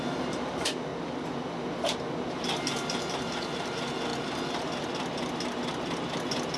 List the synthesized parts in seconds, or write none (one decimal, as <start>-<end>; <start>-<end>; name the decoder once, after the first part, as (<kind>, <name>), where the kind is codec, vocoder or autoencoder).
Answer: 0.0-0.9 (vocoder, BigVGAN v2); 3.1-4.1